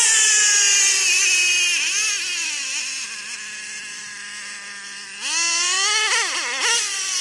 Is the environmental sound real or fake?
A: real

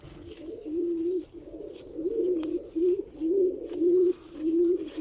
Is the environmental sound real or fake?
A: real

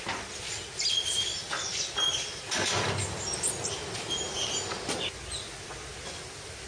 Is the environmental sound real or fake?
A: real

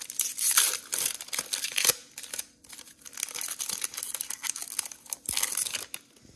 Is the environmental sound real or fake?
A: real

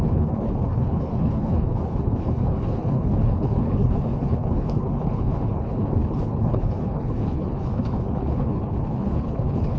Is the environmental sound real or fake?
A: fake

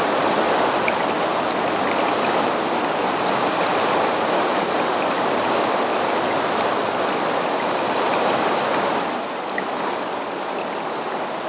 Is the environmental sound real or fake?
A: real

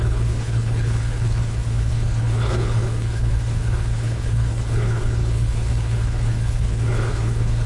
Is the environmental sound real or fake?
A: fake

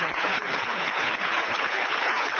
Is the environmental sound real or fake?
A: fake